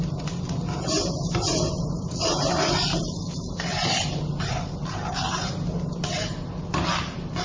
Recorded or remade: recorded